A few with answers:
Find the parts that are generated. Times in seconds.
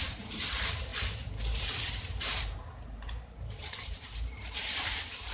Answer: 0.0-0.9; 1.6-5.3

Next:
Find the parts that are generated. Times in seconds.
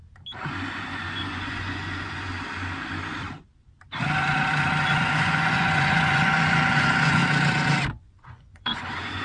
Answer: 0.7-2.3; 4.9-7.2; 7.9-9.2